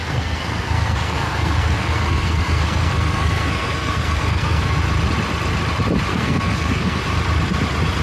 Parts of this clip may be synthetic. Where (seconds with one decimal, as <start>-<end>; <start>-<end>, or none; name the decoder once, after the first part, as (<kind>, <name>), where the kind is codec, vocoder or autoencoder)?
0.0-4.8 (codec, SNAC); 6.1-7.0